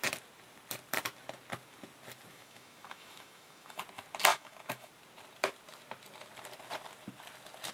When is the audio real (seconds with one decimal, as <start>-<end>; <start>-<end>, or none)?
0.0-2.3; 3.8-4.3; 4.9-7.7